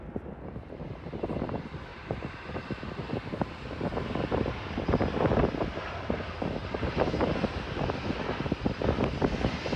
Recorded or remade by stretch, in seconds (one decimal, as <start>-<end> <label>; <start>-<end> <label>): 0.0-1.9 recorded; 1.9-2.5 remade; 2.5-6.6 recorded; 6.6-7.3 remade; 7.3-9.8 recorded